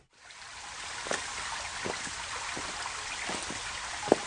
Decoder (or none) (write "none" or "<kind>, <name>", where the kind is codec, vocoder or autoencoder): none